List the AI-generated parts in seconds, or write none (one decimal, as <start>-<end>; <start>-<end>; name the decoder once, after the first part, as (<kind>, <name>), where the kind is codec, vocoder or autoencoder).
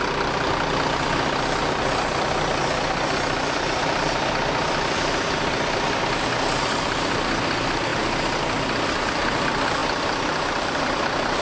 0.0-7.9 (vocoder, BigVGAN v2); 8.4-11.4